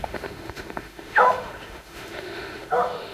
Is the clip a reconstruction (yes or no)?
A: yes